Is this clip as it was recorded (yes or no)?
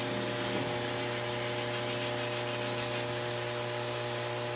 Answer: yes